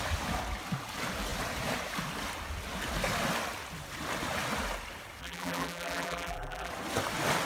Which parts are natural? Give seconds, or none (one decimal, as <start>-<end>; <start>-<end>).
0.0-5.2; 6.7-7.5